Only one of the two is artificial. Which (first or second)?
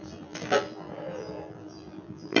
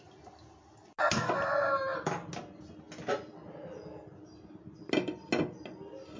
first